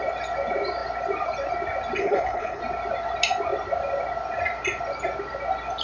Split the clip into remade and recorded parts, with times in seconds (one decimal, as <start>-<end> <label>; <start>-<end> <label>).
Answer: 0.0-2.0 recorded; 2.0-2.6 remade; 2.6-5.8 recorded